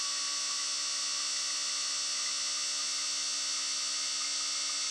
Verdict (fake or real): real